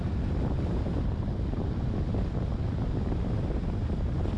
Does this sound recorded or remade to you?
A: recorded